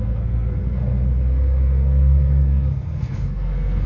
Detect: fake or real fake